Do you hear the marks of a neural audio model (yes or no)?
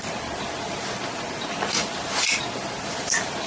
no